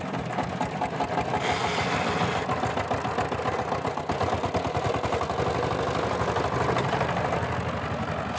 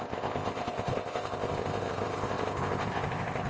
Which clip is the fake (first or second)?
second